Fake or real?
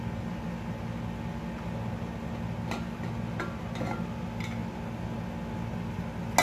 real